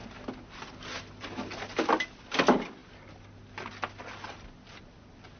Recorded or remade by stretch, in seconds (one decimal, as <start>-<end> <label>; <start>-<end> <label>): 0.0-5.4 recorded